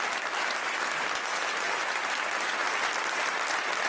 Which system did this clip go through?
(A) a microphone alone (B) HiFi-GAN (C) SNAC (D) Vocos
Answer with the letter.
A